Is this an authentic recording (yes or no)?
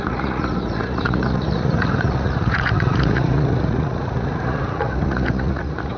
no